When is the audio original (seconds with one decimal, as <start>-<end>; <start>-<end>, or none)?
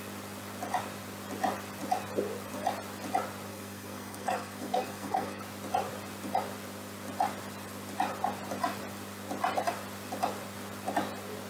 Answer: 0.0-3.5; 5.4-11.5